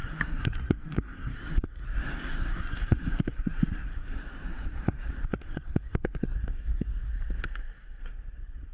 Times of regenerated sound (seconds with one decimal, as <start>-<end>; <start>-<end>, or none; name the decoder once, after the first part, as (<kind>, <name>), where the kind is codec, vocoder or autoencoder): 0.0-7.1 (codec, SNAC); 8.0-8.7